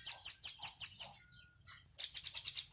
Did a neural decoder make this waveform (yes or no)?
no